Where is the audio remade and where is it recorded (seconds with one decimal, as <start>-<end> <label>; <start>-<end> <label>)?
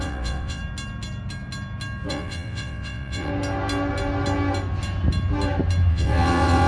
0.0-0.6 remade; 0.6-2.1 recorded; 2.1-3.3 remade; 3.3-5.9 recorded; 5.9-6.7 remade